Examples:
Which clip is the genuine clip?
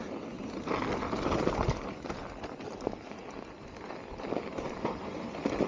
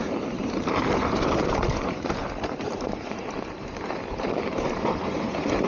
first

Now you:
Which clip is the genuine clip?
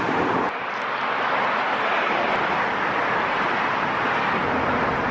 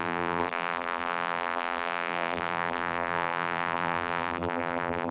first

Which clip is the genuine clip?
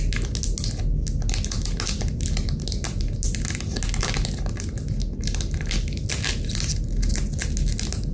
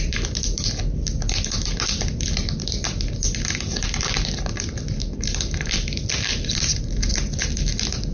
first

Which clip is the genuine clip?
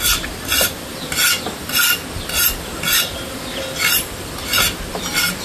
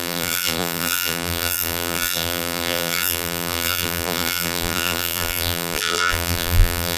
first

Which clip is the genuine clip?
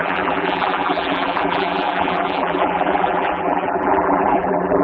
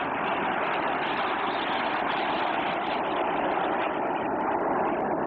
second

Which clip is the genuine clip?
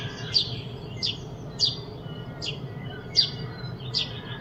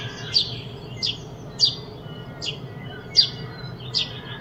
second